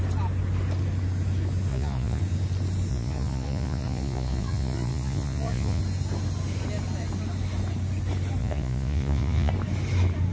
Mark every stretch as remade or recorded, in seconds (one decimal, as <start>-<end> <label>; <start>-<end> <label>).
0.0-1.7 recorded; 1.7-2.2 remade; 2.2-2.9 recorded; 2.9-5.8 remade; 5.8-8.4 recorded; 8.4-9.5 remade; 9.5-10.3 recorded